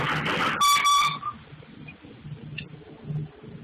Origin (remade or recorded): recorded